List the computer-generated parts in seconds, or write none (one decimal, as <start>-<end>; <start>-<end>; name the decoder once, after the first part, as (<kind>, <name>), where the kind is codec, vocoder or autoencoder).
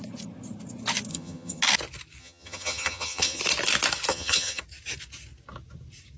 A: 1.1-1.6 (vocoder, HiFi-GAN); 2.2-3.4; 4.1-4.6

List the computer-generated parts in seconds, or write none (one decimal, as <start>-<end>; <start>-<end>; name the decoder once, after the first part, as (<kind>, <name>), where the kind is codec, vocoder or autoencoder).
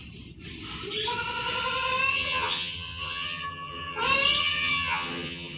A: 2.1-4.0 (vocoder, HiFi-GAN); 4.4-5.6